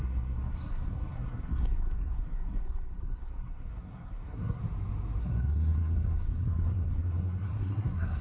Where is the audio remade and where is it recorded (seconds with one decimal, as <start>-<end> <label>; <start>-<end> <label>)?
0.0-4.6 remade; 4.6-5.2 recorded; 5.2-8.2 remade